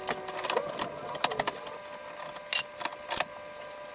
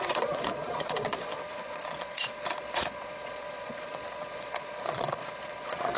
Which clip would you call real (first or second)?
first